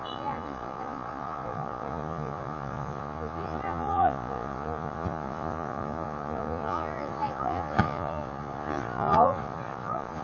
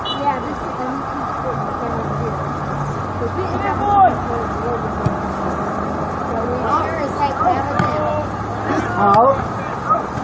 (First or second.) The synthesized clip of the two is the first